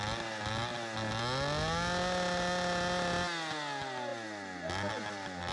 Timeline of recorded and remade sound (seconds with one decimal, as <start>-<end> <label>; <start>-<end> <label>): 0.0-5.5 recorded